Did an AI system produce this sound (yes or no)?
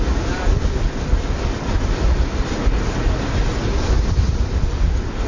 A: no